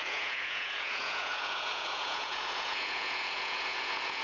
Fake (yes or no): yes